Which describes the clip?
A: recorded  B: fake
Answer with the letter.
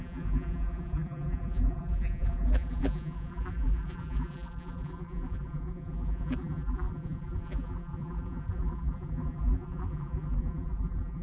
B